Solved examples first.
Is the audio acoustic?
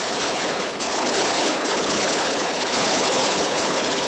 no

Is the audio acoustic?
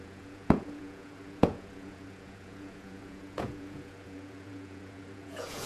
no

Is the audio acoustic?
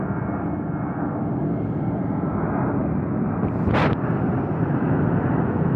yes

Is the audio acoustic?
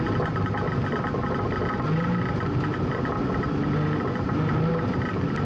yes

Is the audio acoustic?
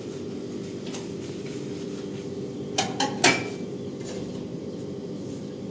yes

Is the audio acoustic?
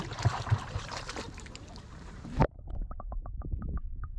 no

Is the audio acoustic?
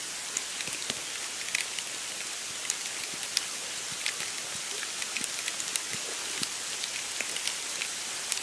yes